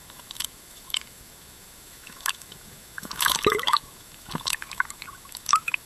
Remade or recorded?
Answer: remade